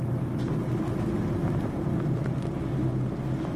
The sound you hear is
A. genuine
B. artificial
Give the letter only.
A